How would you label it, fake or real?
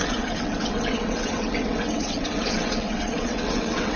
fake